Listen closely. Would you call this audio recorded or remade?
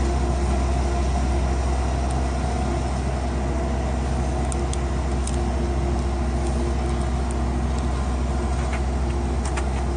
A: recorded